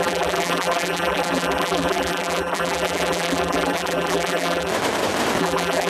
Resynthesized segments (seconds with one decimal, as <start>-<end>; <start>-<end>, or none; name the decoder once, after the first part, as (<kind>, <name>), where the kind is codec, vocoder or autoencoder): 0.0-4.7 (vocoder, BigVGAN v2); 5.4-5.9